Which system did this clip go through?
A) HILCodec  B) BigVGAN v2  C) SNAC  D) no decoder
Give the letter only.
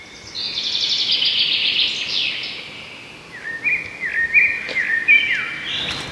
D